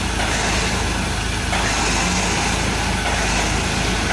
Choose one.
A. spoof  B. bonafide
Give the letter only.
B